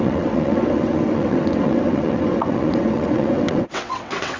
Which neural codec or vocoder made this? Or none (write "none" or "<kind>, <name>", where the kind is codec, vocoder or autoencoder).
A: vocoder, WaveNeXt